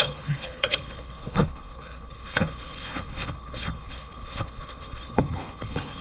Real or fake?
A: fake